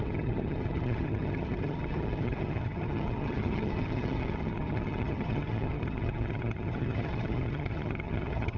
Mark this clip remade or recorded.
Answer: remade